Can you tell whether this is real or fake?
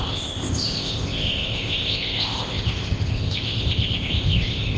fake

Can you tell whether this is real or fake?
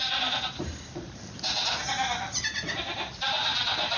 real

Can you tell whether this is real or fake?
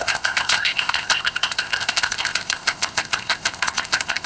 fake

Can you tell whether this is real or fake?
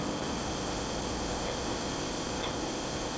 fake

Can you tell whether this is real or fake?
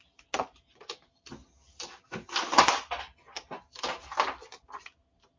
real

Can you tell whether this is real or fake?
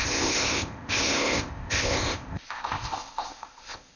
fake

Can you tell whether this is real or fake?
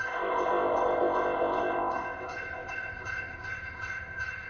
fake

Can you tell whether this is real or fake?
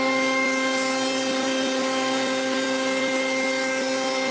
real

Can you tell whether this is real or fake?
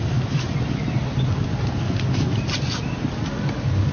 real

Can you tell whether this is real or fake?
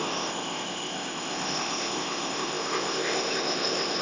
fake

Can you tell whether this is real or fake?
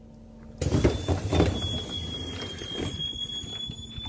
real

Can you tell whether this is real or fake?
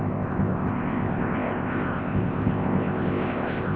fake